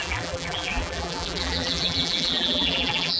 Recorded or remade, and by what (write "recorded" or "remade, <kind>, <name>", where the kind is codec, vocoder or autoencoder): remade, vocoder, BigVGAN v2